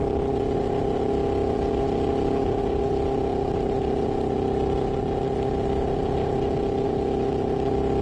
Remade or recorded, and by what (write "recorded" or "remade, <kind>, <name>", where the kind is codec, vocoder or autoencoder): recorded